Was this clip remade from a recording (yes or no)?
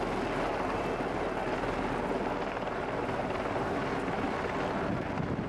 no